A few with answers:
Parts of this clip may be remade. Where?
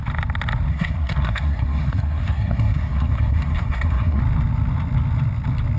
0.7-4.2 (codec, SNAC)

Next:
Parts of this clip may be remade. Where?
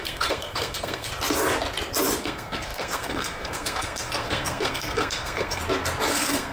0.0-1.1 (codec, SNAC); 2.2-5.6; 6.1-6.5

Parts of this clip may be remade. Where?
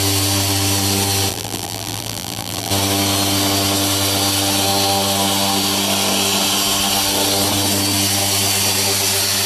1.3-2.7 (vocoder, BigVGAN v2)